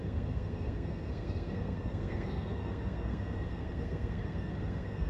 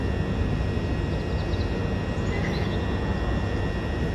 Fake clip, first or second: first